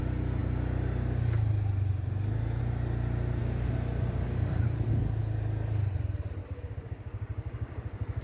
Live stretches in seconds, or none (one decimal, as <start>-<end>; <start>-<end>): 0.0-6.4